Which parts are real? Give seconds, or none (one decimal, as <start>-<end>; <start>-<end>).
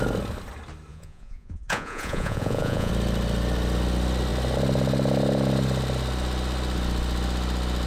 0.0-0.9; 2.9-7.9